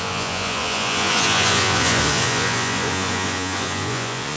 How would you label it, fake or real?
fake